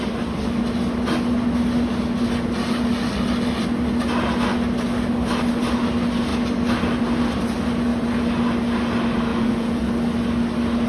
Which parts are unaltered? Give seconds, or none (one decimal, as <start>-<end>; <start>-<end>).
0.0-9.3; 9.8-10.9

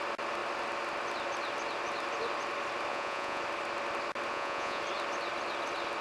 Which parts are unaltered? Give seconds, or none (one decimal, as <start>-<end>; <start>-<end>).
0.0-2.9; 3.4-4.3; 4.8-6.0

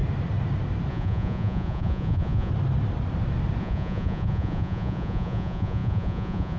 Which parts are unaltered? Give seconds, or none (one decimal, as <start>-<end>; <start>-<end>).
0.0-0.9; 2.5-3.6

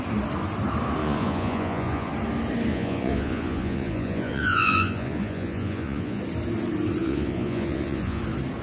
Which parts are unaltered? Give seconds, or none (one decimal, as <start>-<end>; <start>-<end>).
0.0-1.0; 2.1-2.7; 6.2-7.0; 8.2-8.6

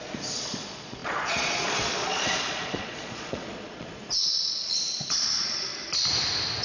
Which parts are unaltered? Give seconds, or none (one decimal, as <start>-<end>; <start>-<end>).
5.7-6.6

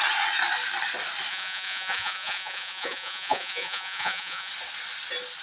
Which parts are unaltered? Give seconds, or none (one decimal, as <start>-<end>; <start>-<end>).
0.0-1.3; 4.5-5.4

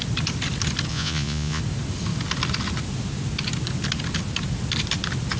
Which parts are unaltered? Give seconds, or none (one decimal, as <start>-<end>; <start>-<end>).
0.0-0.9; 1.6-5.4